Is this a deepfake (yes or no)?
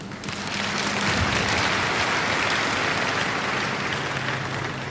no